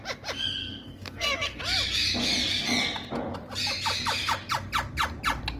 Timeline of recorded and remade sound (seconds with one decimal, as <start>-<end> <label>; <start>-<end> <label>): 0.0-0.6 recorded; 0.6-1.6 remade; 1.6-5.6 recorded